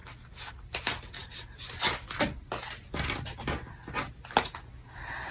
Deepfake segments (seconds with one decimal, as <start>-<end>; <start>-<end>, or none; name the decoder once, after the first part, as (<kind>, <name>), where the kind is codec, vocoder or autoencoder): none